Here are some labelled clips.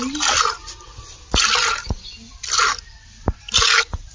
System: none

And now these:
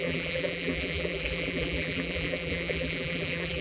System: vocoder, BigVGAN v2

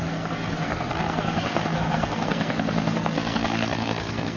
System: codec, SNAC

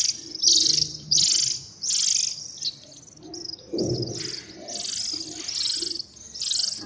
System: none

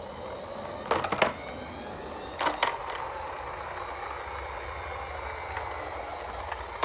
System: none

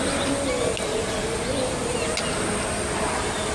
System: none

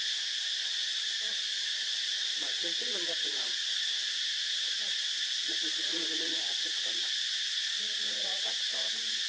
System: vocoder, Vocos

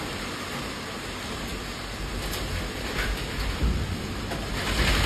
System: none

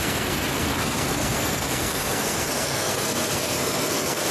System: codec, SNAC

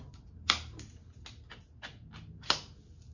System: none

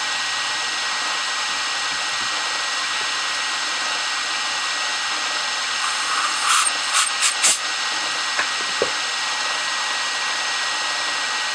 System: none